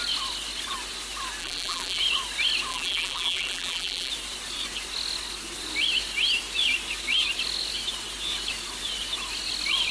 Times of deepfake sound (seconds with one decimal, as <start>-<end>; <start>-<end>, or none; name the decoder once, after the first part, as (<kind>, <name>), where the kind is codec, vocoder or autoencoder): 1.4-2.0 (vocoder, BigVGAN v2); 2.7-4.1